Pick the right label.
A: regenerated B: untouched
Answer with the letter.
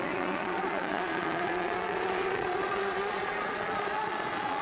A